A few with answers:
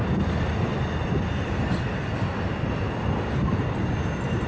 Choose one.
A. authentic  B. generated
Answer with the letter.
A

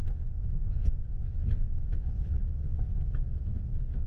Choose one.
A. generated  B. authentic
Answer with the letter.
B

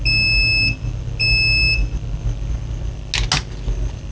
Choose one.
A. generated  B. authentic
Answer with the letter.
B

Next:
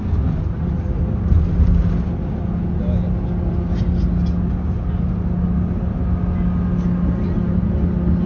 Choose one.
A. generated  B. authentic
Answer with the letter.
B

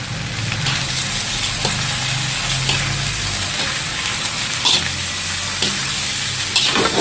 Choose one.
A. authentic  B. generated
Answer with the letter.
A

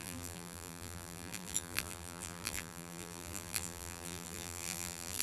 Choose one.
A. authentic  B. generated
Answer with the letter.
B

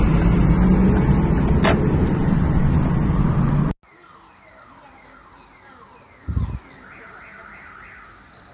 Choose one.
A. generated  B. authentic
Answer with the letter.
B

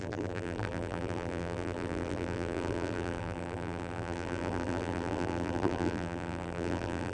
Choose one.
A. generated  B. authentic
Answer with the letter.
A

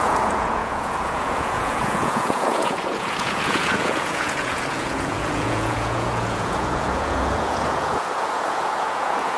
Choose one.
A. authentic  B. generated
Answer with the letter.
B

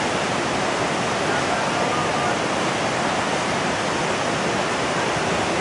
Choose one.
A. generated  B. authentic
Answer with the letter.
B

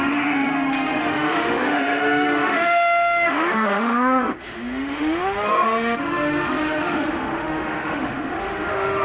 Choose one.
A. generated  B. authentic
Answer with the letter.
A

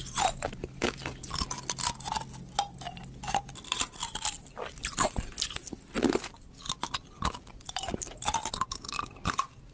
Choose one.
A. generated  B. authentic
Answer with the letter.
B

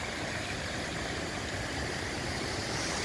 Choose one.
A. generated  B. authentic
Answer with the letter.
A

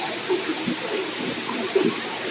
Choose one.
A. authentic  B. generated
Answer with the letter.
A